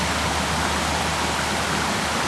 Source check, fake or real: real